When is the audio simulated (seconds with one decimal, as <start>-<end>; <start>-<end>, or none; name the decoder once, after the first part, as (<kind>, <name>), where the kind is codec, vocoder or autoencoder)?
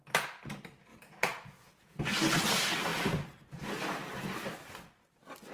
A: 0.9-2.0 (vocoder, Vocos)